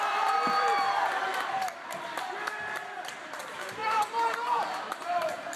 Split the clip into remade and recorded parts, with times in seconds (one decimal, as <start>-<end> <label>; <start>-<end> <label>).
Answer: 0.0-1.3 remade; 1.3-3.4 recorded; 3.4-5.6 remade